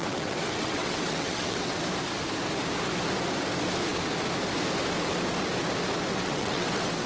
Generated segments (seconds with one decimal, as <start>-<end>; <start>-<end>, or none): 0.0-1.8; 6.1-7.1